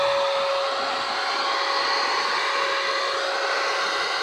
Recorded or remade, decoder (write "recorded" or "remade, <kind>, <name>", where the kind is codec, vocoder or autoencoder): recorded